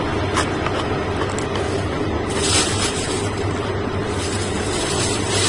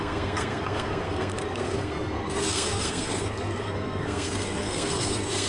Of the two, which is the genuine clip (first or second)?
first